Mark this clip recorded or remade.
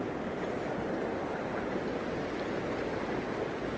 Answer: recorded